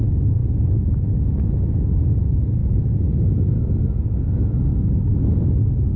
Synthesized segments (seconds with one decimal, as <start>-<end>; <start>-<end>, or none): 2.6-3.6